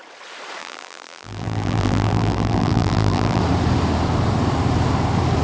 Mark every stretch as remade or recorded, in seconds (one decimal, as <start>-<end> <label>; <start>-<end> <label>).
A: 0.0-0.6 recorded; 0.6-3.4 remade; 3.4-5.4 recorded